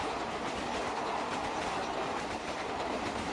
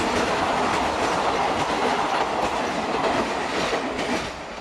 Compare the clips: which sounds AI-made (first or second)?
second